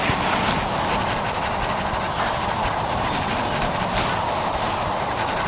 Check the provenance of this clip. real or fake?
real